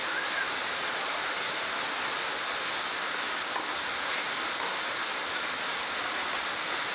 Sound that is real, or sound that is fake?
real